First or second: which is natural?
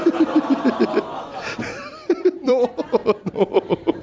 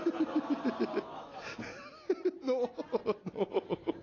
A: second